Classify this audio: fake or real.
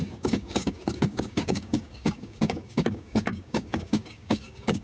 fake